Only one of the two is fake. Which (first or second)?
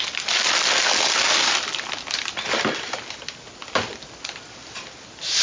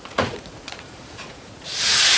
second